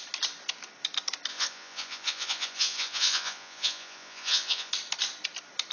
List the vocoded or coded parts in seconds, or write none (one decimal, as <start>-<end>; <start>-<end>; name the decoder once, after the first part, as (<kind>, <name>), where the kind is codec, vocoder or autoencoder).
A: 1.3-4.7 (vocoder, Vocos)